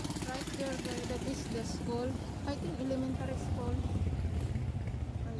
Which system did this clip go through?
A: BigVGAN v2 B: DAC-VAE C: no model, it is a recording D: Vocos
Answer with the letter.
C